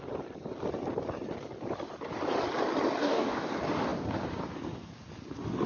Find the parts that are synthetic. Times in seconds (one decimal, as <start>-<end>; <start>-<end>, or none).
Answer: 3.0-3.5